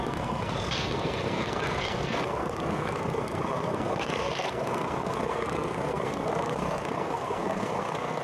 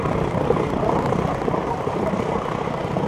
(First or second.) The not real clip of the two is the first